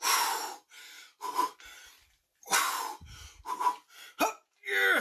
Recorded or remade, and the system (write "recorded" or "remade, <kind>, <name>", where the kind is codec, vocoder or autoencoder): recorded